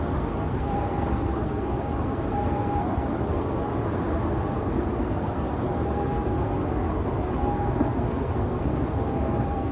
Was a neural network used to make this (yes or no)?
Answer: yes